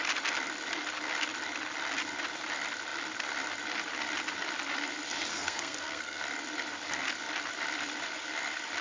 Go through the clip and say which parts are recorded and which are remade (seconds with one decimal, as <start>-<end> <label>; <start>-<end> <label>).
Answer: 0.0-5.3 recorded; 5.3-6.2 remade; 6.2-8.8 recorded